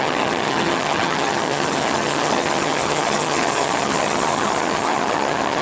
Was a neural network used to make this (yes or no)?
yes